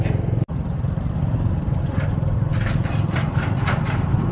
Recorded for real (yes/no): yes